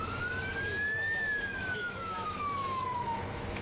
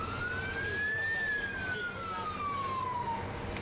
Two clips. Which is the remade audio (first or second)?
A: first